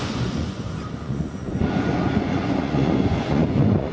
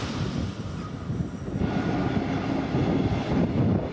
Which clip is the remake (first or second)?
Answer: first